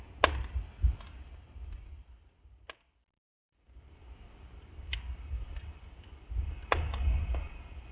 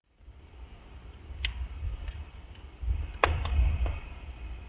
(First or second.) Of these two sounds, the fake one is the second